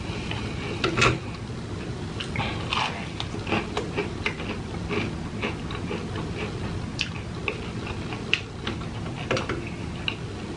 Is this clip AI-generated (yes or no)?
no